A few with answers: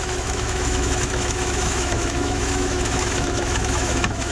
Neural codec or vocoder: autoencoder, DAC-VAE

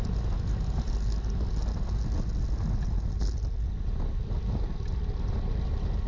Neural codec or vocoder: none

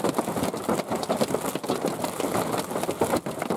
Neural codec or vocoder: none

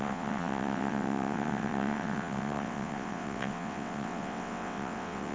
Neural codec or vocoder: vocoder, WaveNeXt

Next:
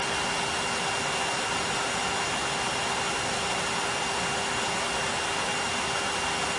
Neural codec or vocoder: none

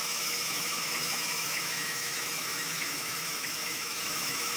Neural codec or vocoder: autoencoder, DAC-VAE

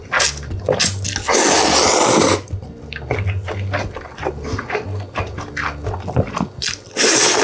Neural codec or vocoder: none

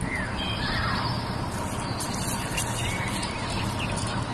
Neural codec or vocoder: none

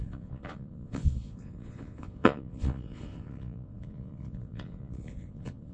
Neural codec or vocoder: vocoder, Vocos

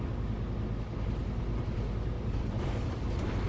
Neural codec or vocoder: none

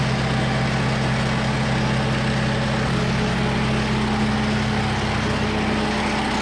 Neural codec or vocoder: none